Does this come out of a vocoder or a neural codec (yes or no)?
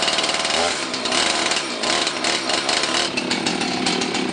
yes